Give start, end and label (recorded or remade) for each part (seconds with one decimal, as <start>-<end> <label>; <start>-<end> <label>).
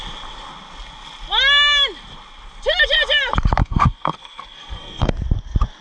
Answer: 0.0-3.6 recorded; 3.6-5.1 remade; 5.1-5.8 recorded